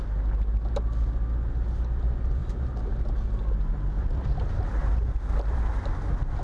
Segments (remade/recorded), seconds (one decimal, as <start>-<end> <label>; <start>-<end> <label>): 0.0-2.4 recorded; 2.4-3.0 remade; 3.0-4.8 recorded; 4.8-5.7 remade; 5.7-6.4 recorded